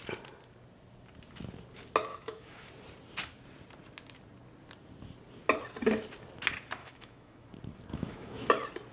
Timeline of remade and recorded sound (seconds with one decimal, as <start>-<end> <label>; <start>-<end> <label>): 0.0-2.1 recorded; 2.1-2.7 remade; 2.7-6.8 recorded; 6.8-7.5 remade; 7.5-7.9 recorded; 7.9-8.5 remade; 8.5-8.9 recorded